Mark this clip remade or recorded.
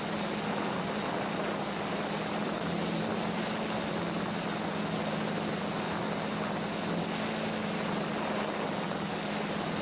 recorded